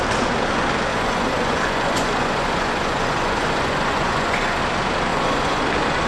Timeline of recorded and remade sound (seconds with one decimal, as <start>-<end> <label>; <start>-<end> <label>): 0.0-0.9 recorded; 0.9-4.6 remade; 4.6-5.1 recorded; 5.1-5.6 remade; 5.6-6.1 recorded